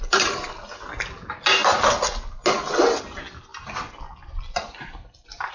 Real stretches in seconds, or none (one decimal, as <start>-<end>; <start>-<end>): 0.0-5.5